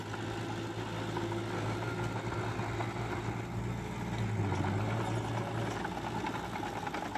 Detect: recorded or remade recorded